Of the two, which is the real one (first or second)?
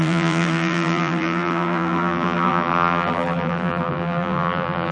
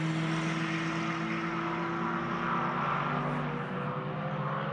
second